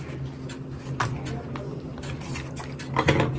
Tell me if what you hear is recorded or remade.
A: recorded